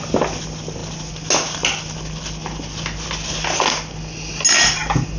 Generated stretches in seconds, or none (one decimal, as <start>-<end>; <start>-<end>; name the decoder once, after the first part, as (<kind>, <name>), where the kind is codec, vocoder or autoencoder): none